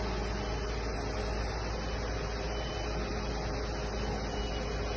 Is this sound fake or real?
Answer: real